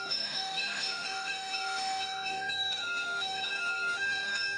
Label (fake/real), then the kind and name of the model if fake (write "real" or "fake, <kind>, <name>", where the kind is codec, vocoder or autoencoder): fake, autoencoder, DAC-VAE